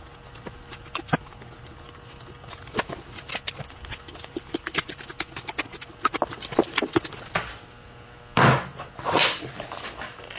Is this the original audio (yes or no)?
yes